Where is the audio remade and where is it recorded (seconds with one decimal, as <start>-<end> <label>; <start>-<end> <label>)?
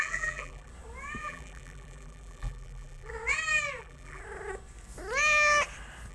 0.0-0.7 remade; 0.7-1.2 recorded; 1.2-3.1 remade; 3.1-3.8 recorded; 3.8-4.2 remade; 4.2-6.1 recorded